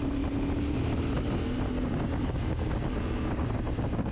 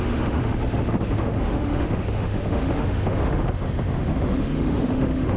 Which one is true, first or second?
first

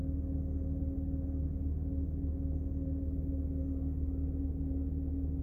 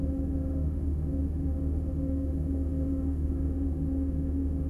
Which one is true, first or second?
first